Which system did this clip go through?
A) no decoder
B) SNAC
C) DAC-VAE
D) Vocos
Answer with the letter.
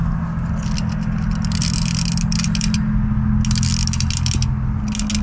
A